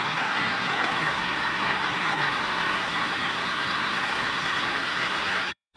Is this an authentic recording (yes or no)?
no